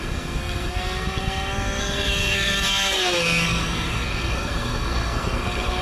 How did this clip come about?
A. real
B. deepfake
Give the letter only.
B